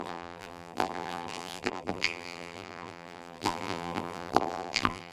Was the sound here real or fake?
fake